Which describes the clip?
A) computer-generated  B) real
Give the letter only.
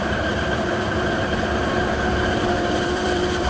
A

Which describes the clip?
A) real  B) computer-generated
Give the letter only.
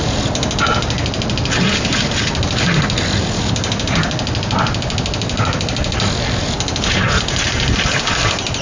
A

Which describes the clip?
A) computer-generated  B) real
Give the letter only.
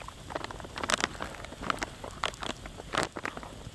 B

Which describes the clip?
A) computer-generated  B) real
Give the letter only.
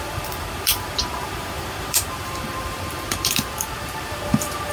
A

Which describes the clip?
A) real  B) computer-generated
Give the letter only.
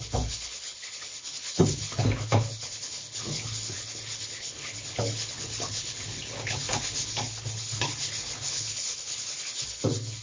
B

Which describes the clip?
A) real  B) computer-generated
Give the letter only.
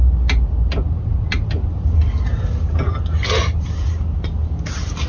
A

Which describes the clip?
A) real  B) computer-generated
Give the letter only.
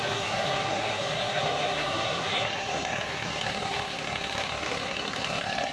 B